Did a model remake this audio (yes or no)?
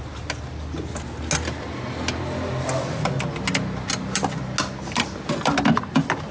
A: no